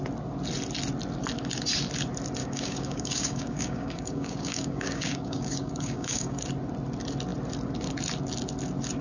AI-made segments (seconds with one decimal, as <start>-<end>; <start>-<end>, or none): 2.4-6.4